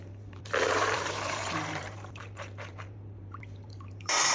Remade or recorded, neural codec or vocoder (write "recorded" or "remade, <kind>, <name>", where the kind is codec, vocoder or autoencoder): remade, vocoder, BigVGAN v2